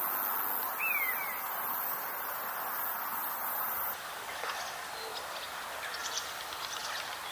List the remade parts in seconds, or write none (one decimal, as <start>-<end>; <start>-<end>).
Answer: 1.2-2.7; 3.2-4.6; 6.0-6.8